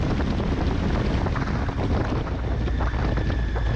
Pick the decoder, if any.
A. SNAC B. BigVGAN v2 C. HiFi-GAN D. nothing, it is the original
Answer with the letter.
D